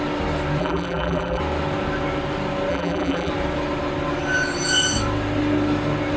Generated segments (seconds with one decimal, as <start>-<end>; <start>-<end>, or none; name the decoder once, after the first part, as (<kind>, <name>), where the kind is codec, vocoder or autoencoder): 0.6-1.4 (vocoder, BigVGAN v2); 2.7-3.3